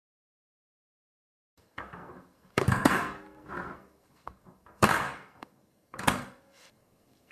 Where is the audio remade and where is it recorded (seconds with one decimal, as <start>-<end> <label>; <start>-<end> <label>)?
0.0-7.3 remade